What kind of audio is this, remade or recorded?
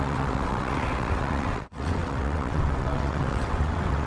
remade